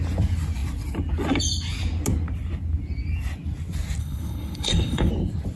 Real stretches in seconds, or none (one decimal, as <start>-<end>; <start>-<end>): 0.0-4.0; 5.1-5.6